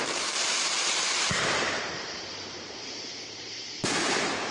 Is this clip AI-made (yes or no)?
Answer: yes